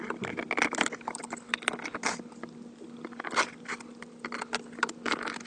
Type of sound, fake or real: real